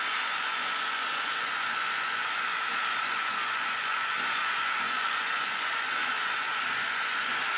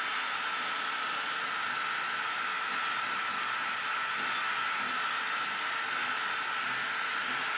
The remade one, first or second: first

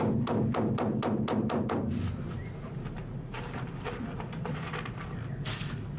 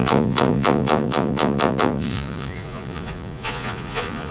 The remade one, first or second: second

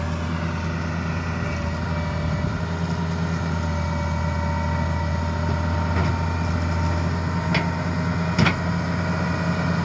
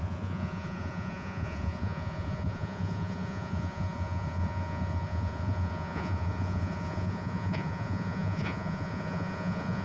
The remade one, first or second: second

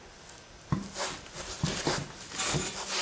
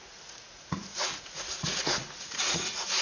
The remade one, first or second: second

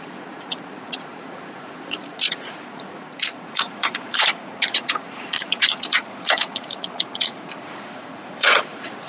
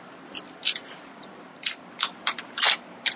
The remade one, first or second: first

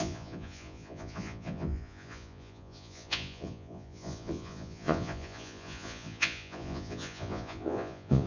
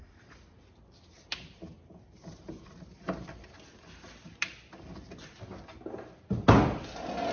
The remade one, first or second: first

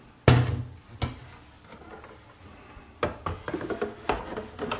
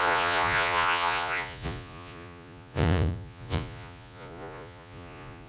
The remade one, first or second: second